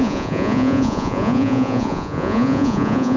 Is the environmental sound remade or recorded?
remade